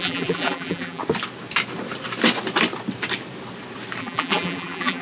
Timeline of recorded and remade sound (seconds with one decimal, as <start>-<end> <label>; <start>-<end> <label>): 0.0-1.0 remade; 1.0-4.0 recorded; 4.0-5.0 remade